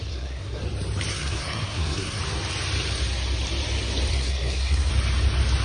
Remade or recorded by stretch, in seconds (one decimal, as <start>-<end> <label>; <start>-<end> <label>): 0.0-0.6 remade; 0.6-1.1 recorded; 1.1-2.2 remade; 2.2-4.1 recorded; 4.1-4.9 remade; 4.9-5.6 recorded